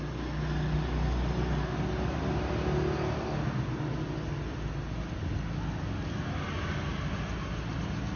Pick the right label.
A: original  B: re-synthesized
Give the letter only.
A